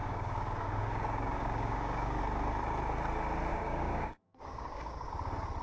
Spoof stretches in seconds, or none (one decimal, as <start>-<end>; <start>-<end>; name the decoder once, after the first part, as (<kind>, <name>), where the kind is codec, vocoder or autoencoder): 0.0-2.2 (codec, DAC); 3.5-5.1